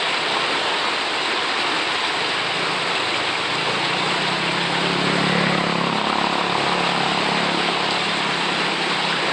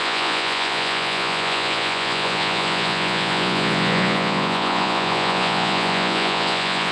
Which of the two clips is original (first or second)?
first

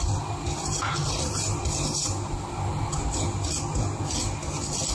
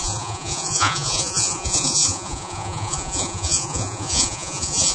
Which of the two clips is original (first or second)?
first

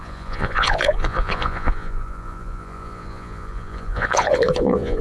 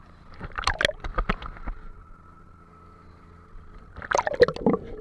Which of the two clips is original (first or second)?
second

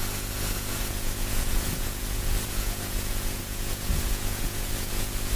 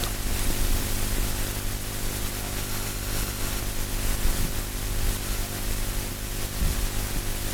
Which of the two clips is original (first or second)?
second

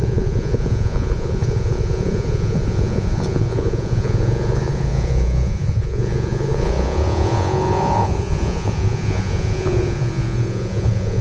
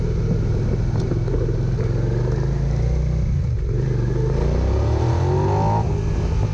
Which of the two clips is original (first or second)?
second